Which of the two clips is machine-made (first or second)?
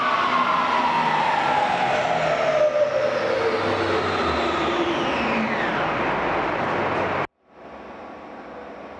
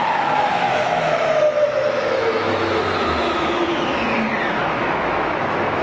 second